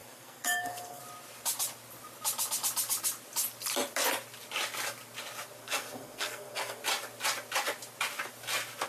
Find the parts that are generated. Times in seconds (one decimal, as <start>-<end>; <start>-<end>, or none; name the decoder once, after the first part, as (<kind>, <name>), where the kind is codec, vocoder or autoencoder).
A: 0.0-1.0 (codec, SNAC); 5.6-6.8